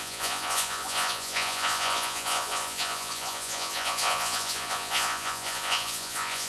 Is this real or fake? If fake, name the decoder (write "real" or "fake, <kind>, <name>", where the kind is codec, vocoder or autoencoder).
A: fake, vocoder, Vocos